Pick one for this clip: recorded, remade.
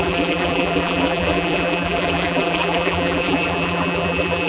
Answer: remade